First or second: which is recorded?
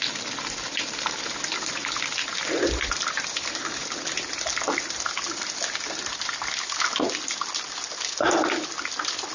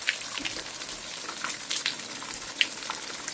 first